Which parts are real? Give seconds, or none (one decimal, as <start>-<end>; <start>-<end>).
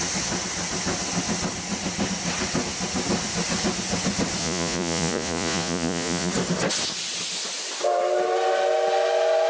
0.0-4.4; 6.3-9.5